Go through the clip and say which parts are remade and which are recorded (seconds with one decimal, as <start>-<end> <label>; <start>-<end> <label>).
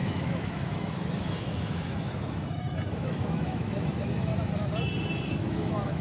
0.0-4.3 remade; 4.3-5.3 recorded; 5.3-6.0 remade